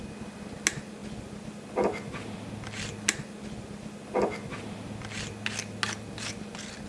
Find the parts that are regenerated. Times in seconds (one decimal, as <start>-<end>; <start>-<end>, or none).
none